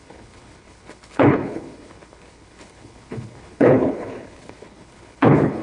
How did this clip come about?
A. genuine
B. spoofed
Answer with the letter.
B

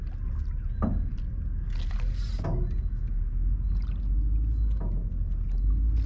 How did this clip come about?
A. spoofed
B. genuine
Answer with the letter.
B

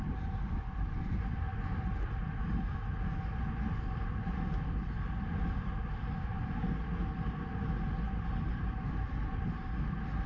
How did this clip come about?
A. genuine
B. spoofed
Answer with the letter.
A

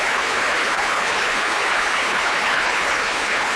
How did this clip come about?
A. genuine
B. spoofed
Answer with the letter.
B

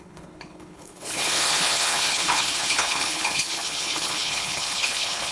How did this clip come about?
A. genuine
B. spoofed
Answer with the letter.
B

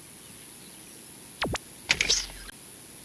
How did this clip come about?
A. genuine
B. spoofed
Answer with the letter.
A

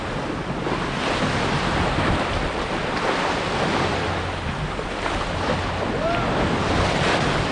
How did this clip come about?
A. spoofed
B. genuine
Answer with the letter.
B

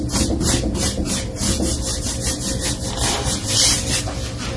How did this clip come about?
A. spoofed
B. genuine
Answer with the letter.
B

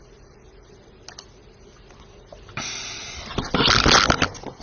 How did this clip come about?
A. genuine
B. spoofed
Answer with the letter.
A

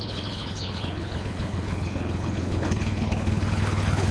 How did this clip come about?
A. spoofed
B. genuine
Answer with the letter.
A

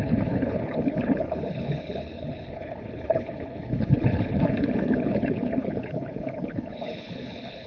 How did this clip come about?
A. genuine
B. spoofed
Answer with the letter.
B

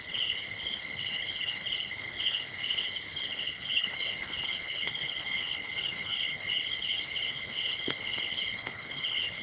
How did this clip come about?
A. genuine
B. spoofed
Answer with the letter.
B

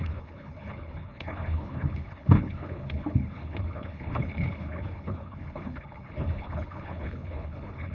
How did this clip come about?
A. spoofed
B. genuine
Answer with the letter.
A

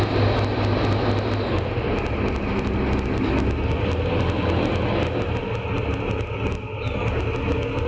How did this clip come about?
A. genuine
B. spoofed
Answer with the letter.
A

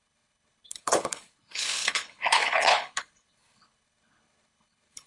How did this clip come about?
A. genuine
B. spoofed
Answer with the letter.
B